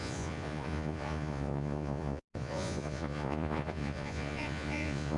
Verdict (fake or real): fake